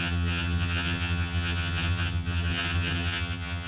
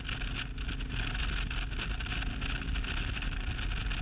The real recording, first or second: second